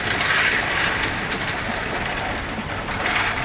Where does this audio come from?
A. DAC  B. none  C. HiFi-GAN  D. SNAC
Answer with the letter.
B